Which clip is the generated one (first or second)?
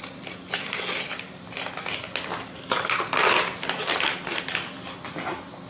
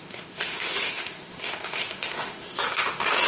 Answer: second